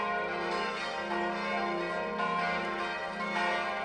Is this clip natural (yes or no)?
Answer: yes